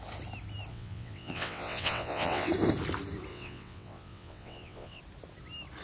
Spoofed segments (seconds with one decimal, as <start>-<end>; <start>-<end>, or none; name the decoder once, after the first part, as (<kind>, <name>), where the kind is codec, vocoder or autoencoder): 0.7-2.5 (vocoder, WaveNeXt); 3.3-5.0